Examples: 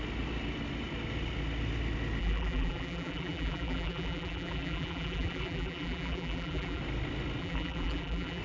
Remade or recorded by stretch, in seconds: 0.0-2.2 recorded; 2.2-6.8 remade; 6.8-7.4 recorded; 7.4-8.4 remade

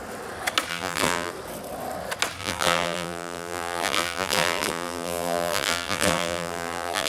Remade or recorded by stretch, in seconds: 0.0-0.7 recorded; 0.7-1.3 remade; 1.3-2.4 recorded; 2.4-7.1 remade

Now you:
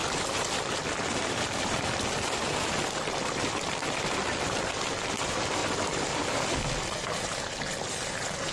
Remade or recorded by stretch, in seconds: 0.0-3.8 remade; 3.8-8.5 recorded